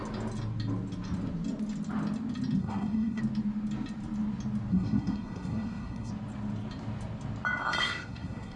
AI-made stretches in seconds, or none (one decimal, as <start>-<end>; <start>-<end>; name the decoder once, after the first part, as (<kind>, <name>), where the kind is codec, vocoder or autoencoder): 2.6-3.2 (codec, SNAC); 4.7-6.1; 7.8-8.6